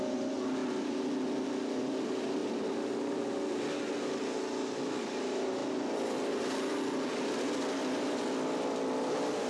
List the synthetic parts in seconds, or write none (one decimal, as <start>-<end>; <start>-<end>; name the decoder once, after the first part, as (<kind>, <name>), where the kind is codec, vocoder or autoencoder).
5.6-9.5 (vocoder, BigVGAN v2)